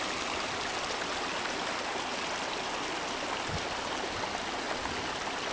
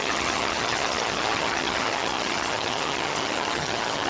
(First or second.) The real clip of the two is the first